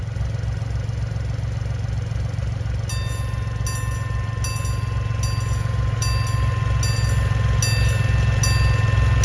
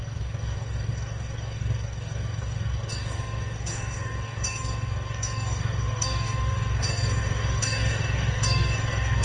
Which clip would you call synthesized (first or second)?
second